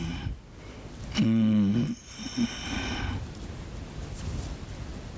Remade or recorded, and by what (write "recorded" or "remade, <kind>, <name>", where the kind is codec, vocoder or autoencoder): recorded